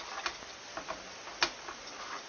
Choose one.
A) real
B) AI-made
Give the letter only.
A